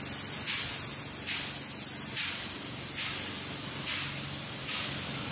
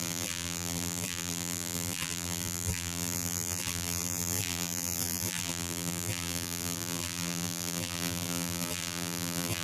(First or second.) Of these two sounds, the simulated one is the second